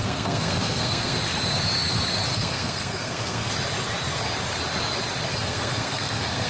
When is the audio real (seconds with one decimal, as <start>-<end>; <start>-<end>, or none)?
1.2-2.3; 3.5-5.3